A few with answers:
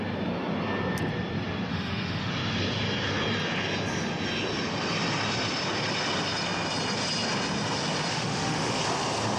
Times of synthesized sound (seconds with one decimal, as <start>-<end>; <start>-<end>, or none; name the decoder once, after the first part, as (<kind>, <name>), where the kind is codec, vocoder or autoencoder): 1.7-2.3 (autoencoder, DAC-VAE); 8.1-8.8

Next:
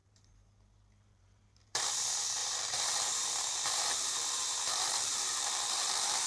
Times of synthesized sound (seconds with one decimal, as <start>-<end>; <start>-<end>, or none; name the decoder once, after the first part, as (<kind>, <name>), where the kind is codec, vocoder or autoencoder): 0.0-1.8 (vocoder, BigVGAN v2); 2.4-6.3

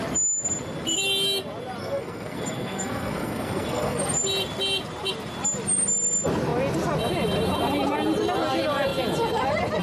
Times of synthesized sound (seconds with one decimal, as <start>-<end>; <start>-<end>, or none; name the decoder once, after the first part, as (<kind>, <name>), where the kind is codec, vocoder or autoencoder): 1.8-4.0 (codec, SNAC)

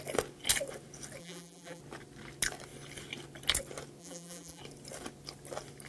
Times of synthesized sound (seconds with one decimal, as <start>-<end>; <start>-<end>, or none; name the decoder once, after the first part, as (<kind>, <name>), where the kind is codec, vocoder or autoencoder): 1.2-1.8 (vocoder, BigVGAN v2); 4.0-4.6

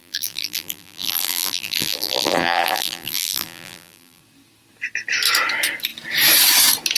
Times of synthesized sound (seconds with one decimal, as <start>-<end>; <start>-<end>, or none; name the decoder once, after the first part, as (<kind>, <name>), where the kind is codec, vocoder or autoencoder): 0.0-4.2 (vocoder, BigVGAN v2)